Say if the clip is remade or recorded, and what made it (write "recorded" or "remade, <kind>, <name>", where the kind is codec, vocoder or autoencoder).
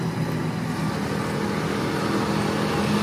recorded